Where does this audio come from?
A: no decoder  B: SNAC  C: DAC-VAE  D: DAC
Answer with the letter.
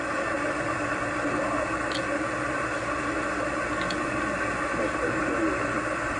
A